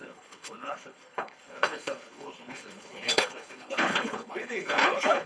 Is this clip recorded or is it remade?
remade